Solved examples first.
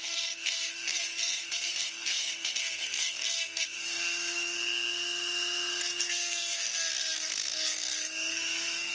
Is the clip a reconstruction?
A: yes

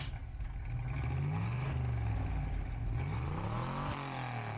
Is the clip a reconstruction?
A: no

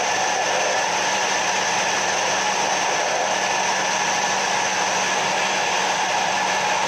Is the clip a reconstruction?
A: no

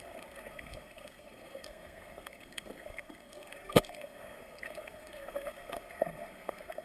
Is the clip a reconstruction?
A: yes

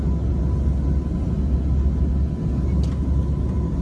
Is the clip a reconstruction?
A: no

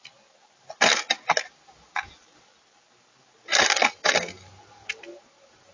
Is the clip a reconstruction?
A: no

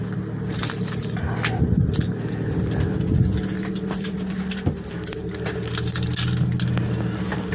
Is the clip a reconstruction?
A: no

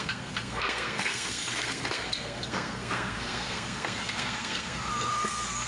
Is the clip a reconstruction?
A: yes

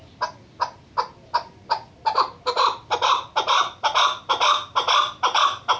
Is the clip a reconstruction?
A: no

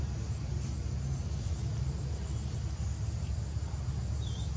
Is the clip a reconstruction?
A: no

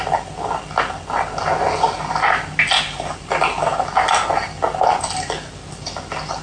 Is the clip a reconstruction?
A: no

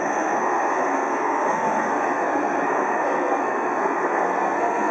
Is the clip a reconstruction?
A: yes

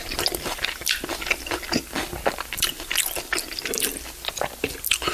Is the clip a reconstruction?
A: no